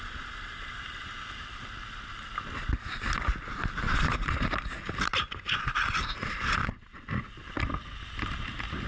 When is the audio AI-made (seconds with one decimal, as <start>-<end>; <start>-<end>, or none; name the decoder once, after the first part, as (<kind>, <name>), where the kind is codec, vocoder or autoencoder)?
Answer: 6.6-7.1 (vocoder, Vocos)